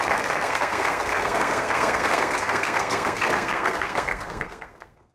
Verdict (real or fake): fake